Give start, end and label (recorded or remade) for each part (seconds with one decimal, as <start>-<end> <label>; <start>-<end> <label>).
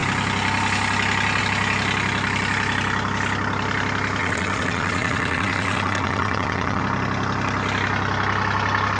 0.0-4.2 recorded; 4.2-6.8 remade; 6.8-9.0 recorded